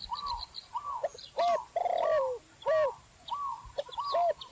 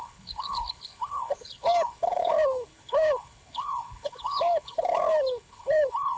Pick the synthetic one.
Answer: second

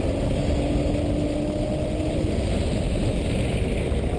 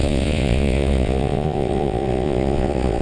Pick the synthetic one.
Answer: second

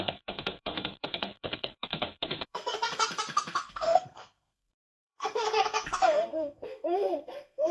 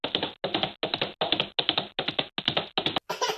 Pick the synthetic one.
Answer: first